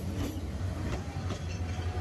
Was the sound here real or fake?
real